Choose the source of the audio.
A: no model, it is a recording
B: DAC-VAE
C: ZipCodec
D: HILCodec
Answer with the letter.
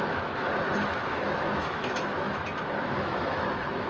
B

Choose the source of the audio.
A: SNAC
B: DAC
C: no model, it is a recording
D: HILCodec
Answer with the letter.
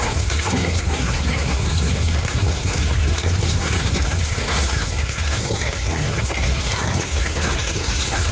A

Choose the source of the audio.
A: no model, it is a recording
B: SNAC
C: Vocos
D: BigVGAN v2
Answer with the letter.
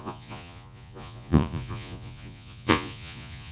C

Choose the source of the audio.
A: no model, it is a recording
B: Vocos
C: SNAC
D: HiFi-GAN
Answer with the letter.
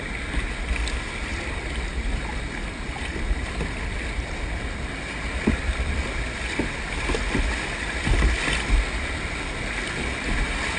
A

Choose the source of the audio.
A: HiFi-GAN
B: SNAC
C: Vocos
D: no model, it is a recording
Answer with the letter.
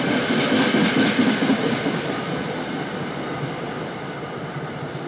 D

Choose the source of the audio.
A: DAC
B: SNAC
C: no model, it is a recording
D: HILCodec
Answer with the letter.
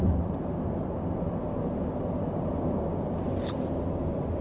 C